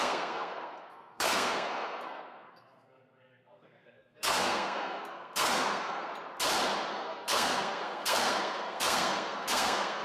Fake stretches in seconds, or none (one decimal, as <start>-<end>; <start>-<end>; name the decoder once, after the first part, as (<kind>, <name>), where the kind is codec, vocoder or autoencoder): 0.0-6.1 (codec, SNAC); 6.9-10.0